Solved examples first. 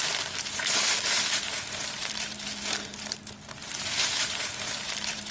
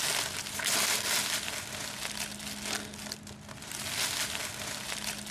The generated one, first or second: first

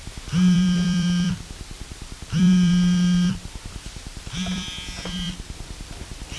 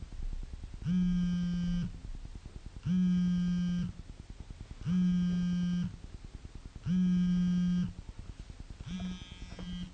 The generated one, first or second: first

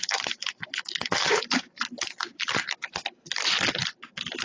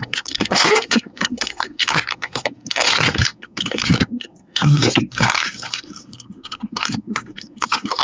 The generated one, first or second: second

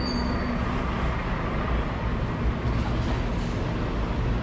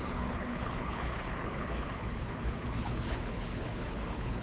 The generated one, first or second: second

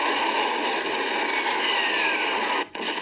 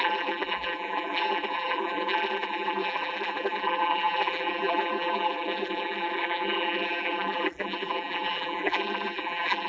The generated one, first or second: second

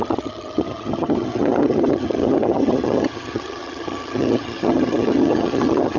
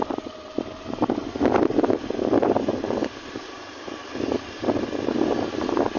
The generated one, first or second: first